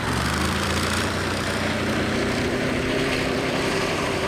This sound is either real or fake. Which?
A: fake